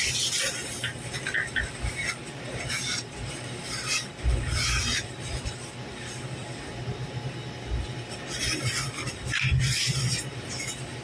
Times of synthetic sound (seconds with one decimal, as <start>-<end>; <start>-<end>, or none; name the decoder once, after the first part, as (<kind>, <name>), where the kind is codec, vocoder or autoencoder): none